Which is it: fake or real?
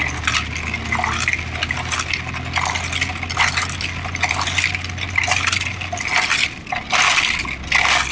real